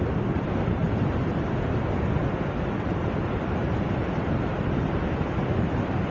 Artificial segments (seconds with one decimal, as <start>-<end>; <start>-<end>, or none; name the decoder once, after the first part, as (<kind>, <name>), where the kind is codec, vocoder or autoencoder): 0.8-1.5 (vocoder, BigVGAN v2); 2.2-4.8